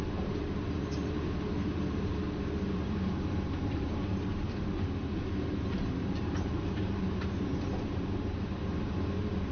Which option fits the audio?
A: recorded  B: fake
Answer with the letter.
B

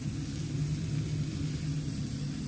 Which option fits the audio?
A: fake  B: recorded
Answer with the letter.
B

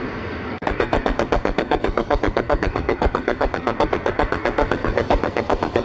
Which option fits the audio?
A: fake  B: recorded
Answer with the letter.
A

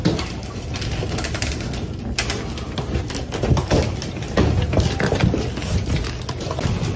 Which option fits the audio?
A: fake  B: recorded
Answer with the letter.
B